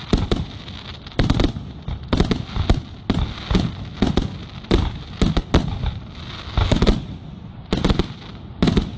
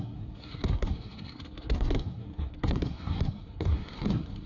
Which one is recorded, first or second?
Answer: first